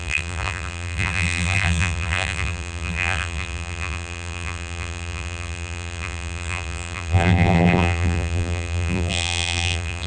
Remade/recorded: remade